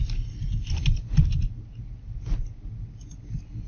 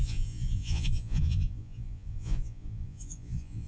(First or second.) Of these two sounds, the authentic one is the first